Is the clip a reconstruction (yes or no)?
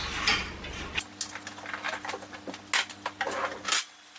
no